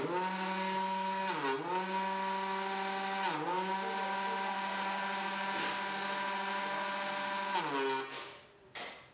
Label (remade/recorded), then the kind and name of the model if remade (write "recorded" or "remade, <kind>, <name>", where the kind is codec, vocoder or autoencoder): recorded